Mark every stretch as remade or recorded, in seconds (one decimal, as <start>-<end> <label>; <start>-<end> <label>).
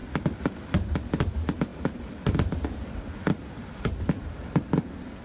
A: 0.0-1.7 recorded; 1.7-4.8 remade; 4.8-5.2 recorded